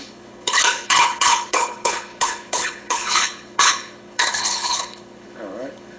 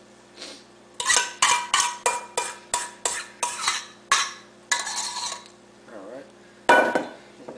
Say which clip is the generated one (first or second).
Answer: first